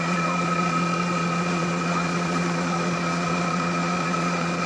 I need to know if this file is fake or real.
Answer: fake